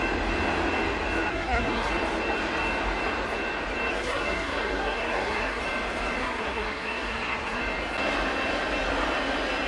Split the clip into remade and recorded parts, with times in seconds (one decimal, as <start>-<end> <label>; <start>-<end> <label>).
0.0-1.3 recorded; 1.3-1.9 remade; 1.9-3.9 recorded; 3.9-5.6 remade; 5.6-6.2 recorded; 6.2-7.6 remade; 7.6-9.7 recorded